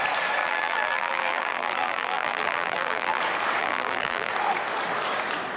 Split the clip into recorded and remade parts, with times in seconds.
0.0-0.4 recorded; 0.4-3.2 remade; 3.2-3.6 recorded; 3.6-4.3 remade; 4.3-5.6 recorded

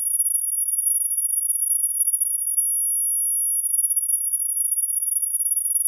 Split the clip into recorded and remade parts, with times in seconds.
0.0-2.6 remade; 2.6-3.6 recorded; 3.6-5.9 remade